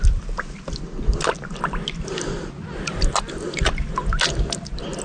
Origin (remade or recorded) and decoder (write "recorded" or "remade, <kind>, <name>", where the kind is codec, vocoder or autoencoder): recorded